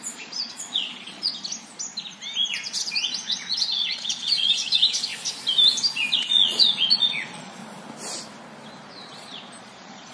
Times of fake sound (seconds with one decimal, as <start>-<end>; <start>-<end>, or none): 0.0-1.3; 2.5-5.1; 6.1-7.6; 8.9-10.1